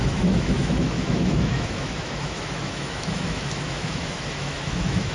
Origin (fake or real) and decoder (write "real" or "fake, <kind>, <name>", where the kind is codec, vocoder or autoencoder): fake, autoencoder, DAC-VAE